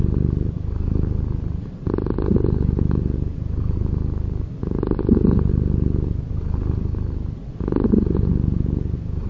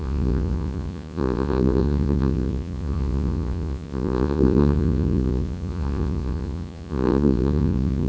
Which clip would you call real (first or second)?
first